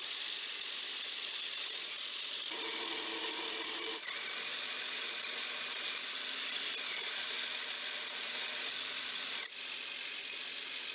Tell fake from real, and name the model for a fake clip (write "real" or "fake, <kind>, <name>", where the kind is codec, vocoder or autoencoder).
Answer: real